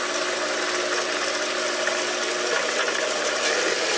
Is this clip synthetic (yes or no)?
no